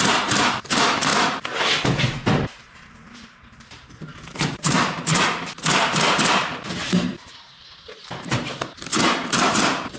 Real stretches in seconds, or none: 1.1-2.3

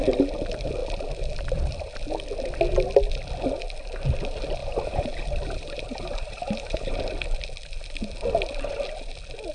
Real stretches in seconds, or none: 0.0-4.6; 7.0-9.5

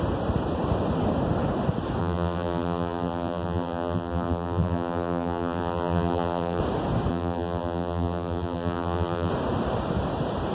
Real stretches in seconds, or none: 0.0-2.0; 6.6-7.1; 9.3-10.5

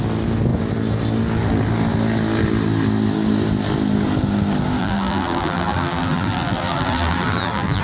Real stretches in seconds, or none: 0.0-4.8

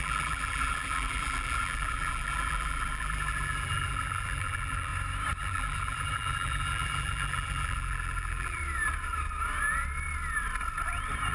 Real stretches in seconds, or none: 4.9-5.4; 8.6-11.3

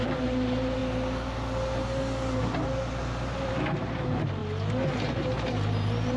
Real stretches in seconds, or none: 0.8-2.4; 4.4-5.3